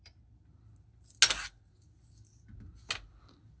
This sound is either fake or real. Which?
real